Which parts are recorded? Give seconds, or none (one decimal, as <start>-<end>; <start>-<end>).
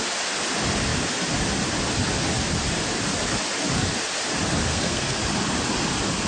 0.0-4.7; 5.2-6.3